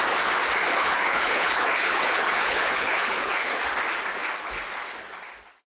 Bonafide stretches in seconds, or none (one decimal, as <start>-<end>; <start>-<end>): 0.0-0.7; 3.6-5.7

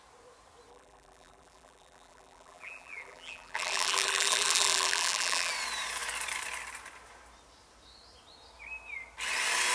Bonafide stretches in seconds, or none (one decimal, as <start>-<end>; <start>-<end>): 0.0-0.7; 5.5-9.7

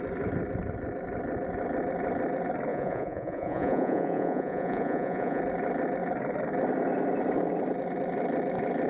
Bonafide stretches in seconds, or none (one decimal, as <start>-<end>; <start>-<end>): 0.0-2.7; 5.4-8.9

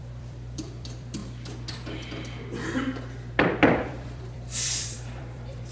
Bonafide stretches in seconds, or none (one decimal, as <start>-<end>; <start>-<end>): 1.2-3.9

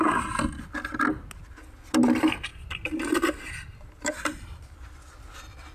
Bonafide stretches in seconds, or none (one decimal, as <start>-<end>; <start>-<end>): 0.0-2.5; 4.6-5.7